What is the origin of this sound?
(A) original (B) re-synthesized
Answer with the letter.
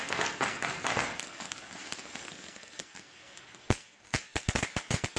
B